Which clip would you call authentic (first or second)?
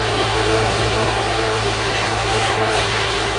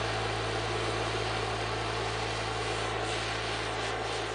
second